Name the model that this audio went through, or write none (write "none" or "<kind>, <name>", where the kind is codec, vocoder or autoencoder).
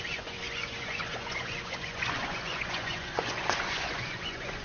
vocoder, Vocos